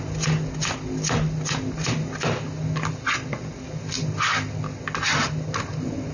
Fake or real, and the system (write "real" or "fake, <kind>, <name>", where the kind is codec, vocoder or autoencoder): real